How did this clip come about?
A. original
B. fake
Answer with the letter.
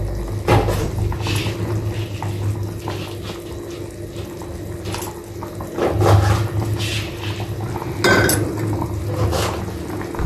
A